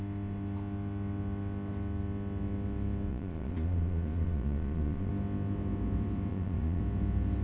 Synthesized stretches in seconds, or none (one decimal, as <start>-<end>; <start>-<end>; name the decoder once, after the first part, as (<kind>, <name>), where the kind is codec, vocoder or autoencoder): 3.1-5.1 (vocoder, Vocos); 6.3-6.8